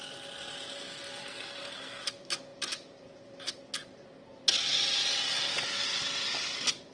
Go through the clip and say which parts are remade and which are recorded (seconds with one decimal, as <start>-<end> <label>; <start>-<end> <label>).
0.0-1.2 recorded; 1.2-2.0 remade; 2.0-6.9 recorded